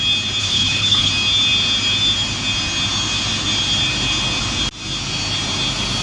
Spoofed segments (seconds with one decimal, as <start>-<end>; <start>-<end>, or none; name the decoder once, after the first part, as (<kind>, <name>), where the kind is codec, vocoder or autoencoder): 0.4-1.1 (codec, HILCodec)